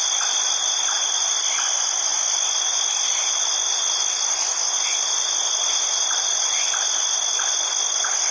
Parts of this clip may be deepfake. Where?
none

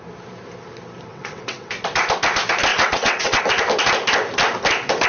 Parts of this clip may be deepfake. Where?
1.1-1.7 (vocoder, WaveNeXt); 2.7-3.4